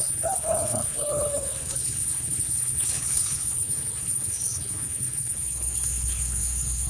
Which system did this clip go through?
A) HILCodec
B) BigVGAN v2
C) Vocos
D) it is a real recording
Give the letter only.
A